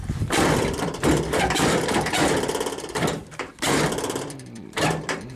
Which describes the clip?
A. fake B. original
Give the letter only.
A